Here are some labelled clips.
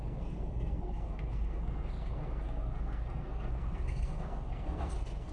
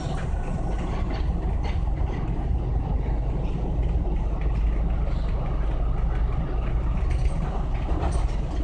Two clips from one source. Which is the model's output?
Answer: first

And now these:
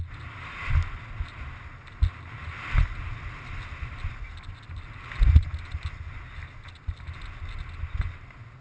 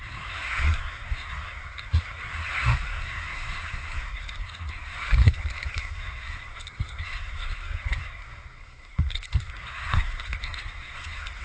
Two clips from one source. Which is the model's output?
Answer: second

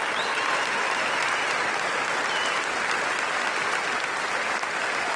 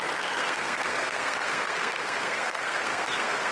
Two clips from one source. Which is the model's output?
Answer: second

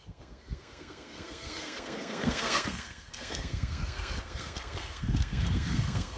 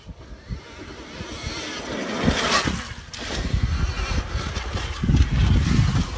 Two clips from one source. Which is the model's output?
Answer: first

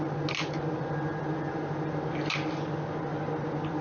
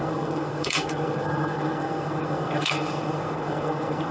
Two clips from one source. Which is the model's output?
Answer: second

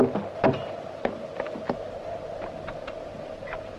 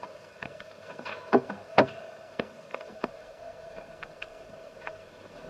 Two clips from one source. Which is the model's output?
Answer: second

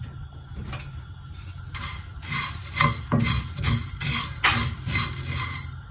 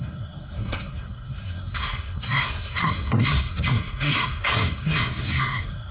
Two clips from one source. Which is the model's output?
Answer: second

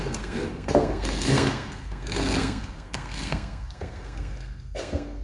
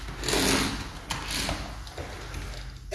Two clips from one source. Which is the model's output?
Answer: first